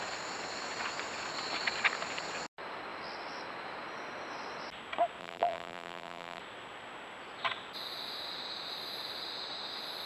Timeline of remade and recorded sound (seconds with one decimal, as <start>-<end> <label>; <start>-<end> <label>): 0.0-5.2 recorded; 5.2-6.4 remade; 6.4-10.1 recorded